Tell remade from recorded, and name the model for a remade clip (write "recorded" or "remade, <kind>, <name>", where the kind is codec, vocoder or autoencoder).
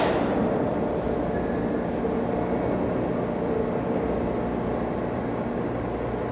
recorded